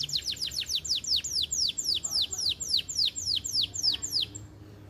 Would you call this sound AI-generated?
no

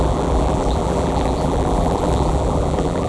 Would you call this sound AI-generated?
yes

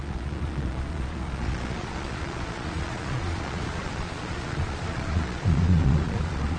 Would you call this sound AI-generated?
yes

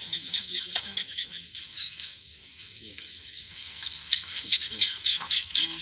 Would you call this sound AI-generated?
yes